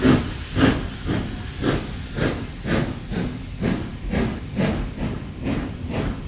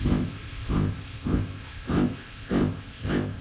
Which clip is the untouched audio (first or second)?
first